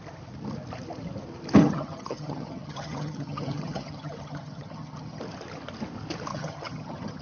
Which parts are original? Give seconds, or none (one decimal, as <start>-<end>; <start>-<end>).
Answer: 0.0-1.6; 5.2-6.3